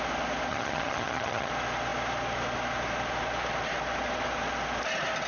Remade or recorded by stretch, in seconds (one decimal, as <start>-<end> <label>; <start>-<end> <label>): 0.0-0.5 recorded; 0.5-1.5 remade; 1.5-5.3 recorded